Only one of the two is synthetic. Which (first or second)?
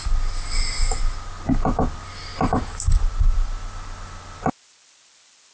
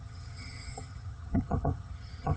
second